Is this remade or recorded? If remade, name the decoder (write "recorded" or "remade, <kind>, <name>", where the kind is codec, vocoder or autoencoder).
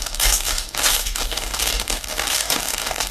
remade, codec, DAC